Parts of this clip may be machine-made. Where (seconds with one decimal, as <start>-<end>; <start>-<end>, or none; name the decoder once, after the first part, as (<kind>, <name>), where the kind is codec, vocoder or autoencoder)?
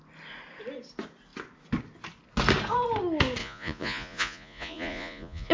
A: 3.4-5.5 (vocoder, Vocos)